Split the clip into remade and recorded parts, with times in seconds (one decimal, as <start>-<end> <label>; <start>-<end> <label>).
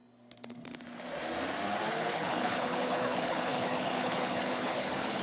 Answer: 0.0-1.9 recorded; 1.9-5.2 remade